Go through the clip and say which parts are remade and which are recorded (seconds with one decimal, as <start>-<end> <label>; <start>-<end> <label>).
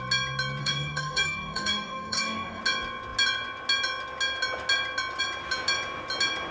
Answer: 0.0-0.6 recorded; 0.6-2.6 remade; 2.6-6.5 recorded